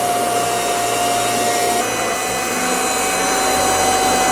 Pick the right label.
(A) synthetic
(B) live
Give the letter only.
B